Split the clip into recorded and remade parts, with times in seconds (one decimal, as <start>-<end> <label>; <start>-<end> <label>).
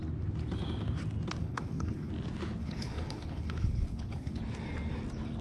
0.0-1.4 recorded; 1.4-2.1 remade; 2.1-2.6 recorded; 2.6-4.4 remade; 4.4-5.4 recorded